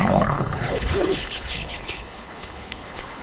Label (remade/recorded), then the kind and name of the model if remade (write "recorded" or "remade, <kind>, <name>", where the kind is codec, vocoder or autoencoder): remade, codec, HILCodec